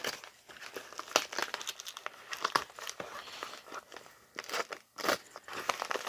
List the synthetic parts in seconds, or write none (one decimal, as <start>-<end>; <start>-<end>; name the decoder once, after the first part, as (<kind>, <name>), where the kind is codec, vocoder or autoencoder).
none